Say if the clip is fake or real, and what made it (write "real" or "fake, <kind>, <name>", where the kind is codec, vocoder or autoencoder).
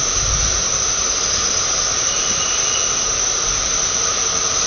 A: fake, vocoder, BigVGAN v2